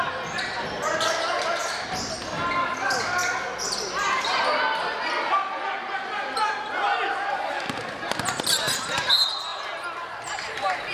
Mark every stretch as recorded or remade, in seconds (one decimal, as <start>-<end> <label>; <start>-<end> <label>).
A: 0.0-1.6 recorded; 1.6-2.2 remade; 2.2-10.9 recorded